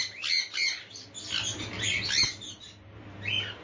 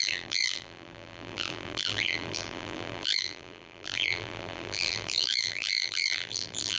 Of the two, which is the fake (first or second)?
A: second